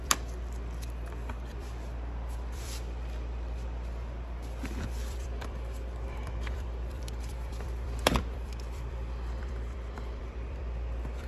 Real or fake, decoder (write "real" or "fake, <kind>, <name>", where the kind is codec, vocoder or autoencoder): fake, vocoder, BigVGAN v2